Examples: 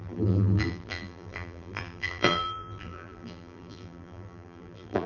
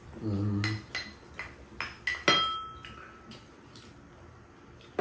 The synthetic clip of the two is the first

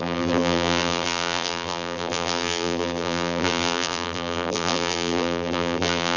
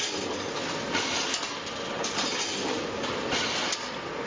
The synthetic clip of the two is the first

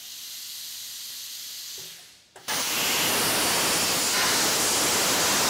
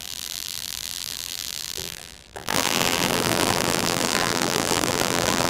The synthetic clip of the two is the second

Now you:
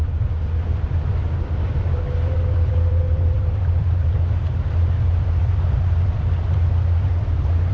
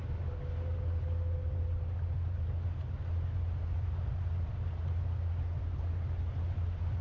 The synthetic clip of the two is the first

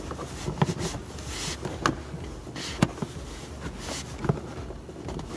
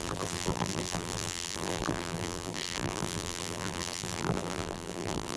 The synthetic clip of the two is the second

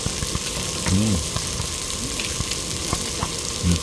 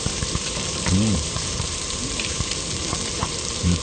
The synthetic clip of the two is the second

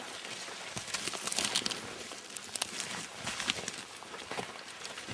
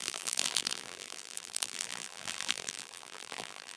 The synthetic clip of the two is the second